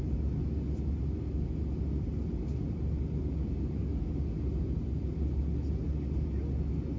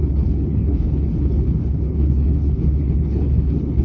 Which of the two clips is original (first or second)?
first